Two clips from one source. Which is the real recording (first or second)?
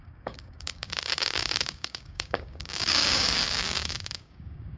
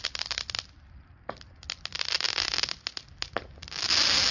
second